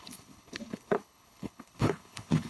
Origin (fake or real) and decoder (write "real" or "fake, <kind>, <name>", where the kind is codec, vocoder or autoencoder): fake, codec, HILCodec